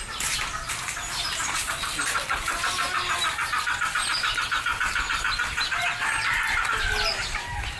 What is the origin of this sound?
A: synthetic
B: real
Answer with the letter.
B